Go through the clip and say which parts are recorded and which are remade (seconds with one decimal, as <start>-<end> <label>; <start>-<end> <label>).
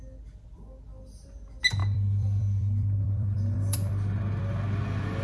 0.0-1.8 recorded; 1.8-4.4 remade; 4.4-5.2 recorded